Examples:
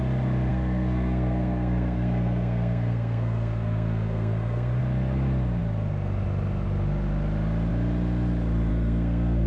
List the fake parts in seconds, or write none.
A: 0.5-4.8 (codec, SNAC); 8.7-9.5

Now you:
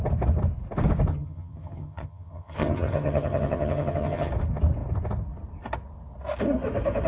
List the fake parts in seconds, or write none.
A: 1.1-4.3 (vocoder, HiFi-GAN)

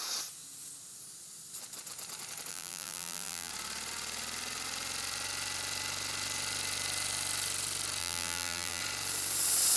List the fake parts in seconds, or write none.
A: 2.5-3.5 (vocoder, BigVGAN v2); 8.0-8.8

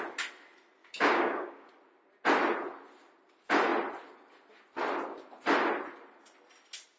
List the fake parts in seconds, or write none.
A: 0.8-1.7 (codec, DAC)

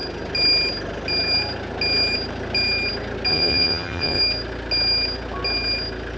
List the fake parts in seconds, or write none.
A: 3.3-4.2 (vocoder, HiFi-GAN)

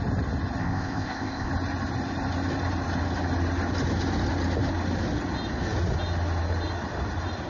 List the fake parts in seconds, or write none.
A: 0.6-1.5 (codec, ZipCodec)

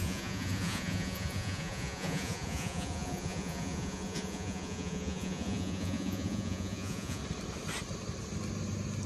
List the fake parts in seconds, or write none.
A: 0.0-7.2 (vocoder, Vocos)